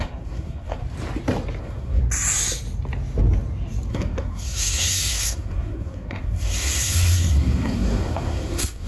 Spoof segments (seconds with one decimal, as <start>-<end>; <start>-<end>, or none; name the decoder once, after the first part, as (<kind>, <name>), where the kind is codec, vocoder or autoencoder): 0.0-0.8 (codec, SNAC); 1.6-2.0; 3.9-8.9